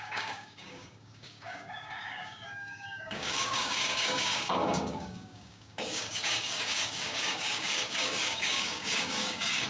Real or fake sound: fake